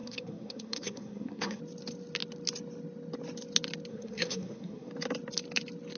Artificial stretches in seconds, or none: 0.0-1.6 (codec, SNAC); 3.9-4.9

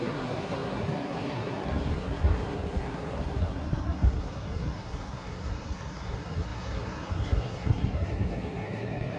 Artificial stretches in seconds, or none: 0.0-9.2 (codec, SNAC)

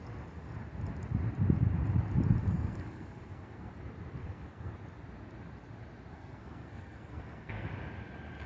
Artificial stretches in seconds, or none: 2.4-3.7 (codec, SNAC); 4.2-4.7; 6.1-7.7

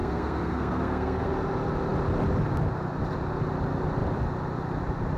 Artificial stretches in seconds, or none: 0.0-1.3 (codec, SNAC)

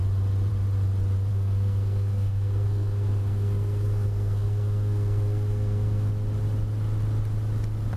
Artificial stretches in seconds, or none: 1.3-6.1 (codec, SNAC)